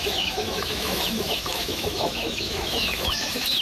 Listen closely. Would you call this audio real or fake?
fake